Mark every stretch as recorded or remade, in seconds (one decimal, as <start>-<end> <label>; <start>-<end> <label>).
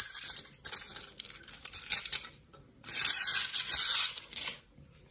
0.0-3.3 recorded; 3.3-4.6 remade; 4.6-5.1 recorded